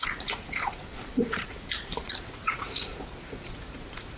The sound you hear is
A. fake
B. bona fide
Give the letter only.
A